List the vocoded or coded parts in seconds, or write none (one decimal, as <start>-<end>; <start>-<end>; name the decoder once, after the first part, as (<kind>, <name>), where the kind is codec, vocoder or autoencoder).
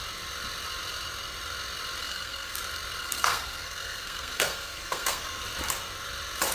2.0-2.6 (codec, SNAC); 3.0-5.4